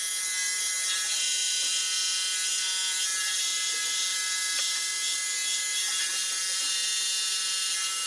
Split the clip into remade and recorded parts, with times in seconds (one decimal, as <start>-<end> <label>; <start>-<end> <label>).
0.0-8.1 recorded